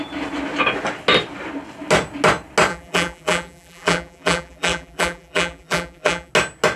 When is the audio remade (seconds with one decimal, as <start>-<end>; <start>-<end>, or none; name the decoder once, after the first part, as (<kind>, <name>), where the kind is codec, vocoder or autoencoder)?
2.7-6.3 (vocoder, BigVGAN v2)